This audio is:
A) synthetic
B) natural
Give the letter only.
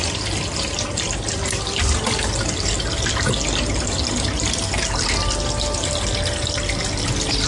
B